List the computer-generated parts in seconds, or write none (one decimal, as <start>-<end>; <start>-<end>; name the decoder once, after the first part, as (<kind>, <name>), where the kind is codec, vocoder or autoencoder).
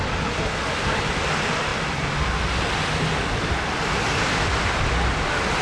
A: none